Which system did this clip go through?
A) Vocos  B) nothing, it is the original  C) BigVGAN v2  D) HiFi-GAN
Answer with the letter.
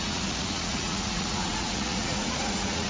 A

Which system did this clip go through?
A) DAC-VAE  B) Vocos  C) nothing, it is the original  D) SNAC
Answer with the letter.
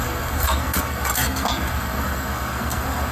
D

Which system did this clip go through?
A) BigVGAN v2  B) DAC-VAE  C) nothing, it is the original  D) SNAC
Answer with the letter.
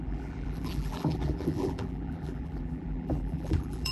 A